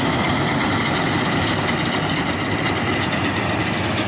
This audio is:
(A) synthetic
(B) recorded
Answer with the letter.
B